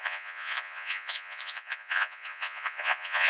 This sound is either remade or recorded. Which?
remade